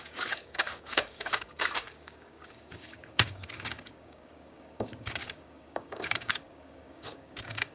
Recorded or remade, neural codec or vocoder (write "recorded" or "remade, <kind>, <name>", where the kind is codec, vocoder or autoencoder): remade, codec, DAC